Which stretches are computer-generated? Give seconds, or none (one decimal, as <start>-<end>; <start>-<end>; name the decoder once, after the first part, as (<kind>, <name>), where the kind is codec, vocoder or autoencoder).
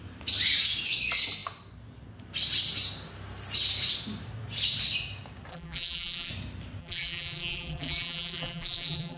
5.5-6.3 (vocoder, BigVGAN v2); 6.8-9.2